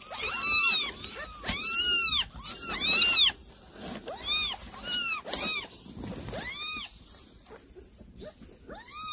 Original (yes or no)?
yes